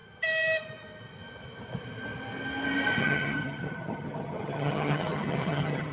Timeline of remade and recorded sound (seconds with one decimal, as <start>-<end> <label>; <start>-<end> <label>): 0.0-3.0 recorded; 3.0-5.9 remade